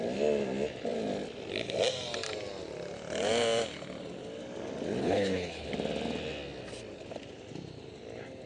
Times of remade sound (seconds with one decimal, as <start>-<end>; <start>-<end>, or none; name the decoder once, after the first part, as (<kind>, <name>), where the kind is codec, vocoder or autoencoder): 5.0-5.7 (codec, HILCodec)